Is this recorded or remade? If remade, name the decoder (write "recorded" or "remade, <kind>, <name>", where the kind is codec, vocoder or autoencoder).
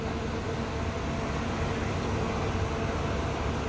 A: recorded